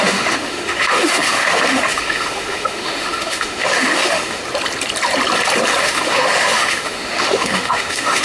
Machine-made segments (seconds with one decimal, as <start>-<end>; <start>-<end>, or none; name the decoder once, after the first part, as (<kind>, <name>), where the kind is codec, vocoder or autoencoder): 0.0-4.4 (autoencoder, DAC-VAE); 5.8-8.2

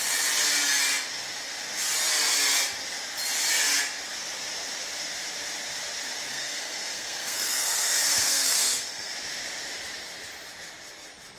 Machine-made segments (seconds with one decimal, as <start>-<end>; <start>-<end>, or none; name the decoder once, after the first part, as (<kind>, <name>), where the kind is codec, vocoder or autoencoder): 6.3-9.1 (codec, SNAC)